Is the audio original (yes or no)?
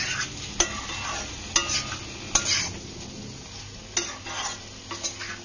yes